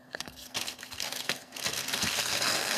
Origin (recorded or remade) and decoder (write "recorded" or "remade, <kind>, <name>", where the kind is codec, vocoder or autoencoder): remade, codec, SNAC